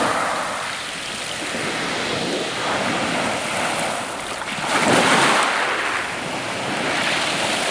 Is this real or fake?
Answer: real